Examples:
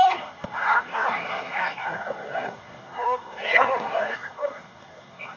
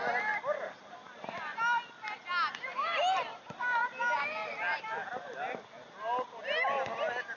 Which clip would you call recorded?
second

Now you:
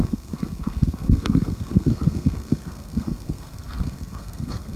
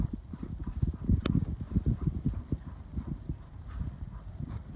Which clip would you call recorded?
second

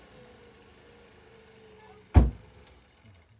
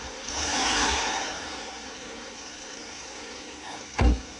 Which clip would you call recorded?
first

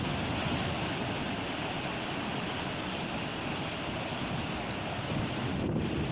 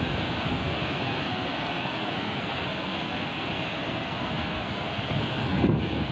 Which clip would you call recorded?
first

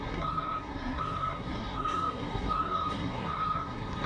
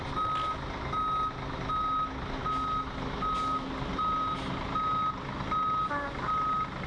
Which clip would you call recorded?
second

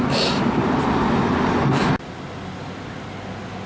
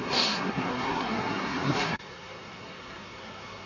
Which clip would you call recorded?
first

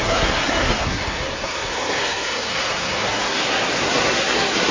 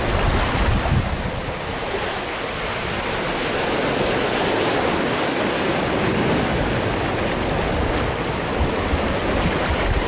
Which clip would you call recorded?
second